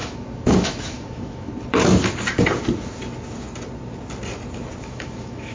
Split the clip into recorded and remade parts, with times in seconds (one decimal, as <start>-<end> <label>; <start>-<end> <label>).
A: 0.0-1.5 remade; 1.5-4.8 recorded; 4.8-5.5 remade